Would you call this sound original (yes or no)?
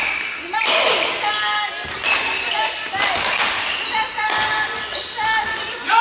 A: yes